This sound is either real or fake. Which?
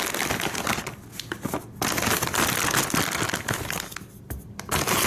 real